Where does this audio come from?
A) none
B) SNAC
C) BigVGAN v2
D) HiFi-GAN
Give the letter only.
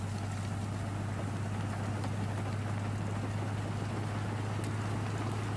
A